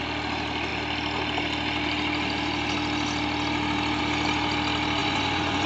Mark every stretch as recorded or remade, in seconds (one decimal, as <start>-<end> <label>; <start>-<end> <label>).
0.0-5.0 recorded; 5.0-5.7 remade